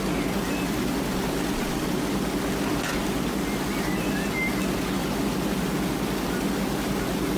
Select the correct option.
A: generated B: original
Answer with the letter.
B